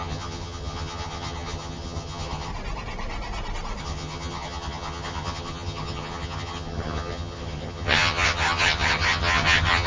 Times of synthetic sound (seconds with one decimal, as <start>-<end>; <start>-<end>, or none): 0.0-2.5; 3.8-9.9